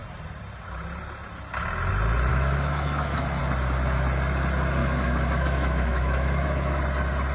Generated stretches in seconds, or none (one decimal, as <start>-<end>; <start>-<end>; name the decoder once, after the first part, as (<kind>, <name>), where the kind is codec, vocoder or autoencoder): 2.3-3.4 (autoencoder, DAC-VAE); 4.8-6.8